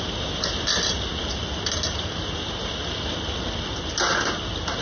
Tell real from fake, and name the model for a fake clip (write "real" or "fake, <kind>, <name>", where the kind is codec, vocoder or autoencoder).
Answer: real